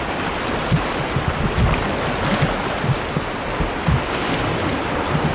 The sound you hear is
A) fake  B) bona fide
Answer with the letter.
B